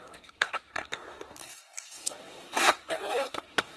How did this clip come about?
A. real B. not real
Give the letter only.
B